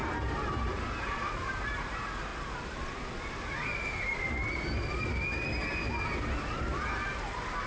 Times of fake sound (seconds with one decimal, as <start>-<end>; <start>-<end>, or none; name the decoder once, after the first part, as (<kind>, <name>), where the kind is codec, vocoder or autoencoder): 1.0-2.3 (vocoder, BigVGAN v2); 6.4-7.7